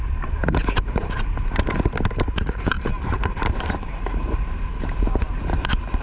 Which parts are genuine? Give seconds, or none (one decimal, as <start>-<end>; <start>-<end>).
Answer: none